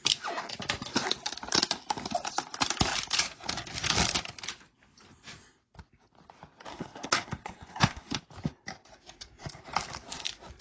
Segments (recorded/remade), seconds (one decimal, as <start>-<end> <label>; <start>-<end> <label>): 0.0-6.7 recorded; 6.7-8.2 remade; 8.2-10.6 recorded

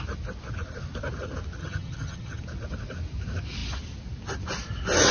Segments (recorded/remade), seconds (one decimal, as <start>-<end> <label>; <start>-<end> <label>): 0.0-1.6 recorded; 1.6-2.4 remade; 2.4-5.1 recorded

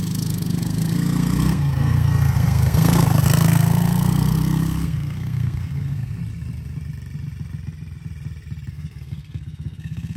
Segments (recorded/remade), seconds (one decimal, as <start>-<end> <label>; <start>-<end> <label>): 0.0-6.2 remade; 6.2-8.7 recorded; 8.7-10.2 remade